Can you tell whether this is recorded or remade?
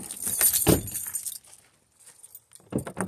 recorded